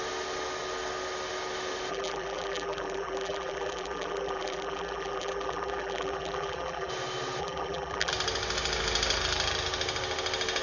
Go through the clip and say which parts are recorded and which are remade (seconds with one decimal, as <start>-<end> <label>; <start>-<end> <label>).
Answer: 0.0-1.9 recorded; 1.9-6.9 remade; 6.9-7.4 recorded; 7.4-8.1 remade; 8.1-10.6 recorded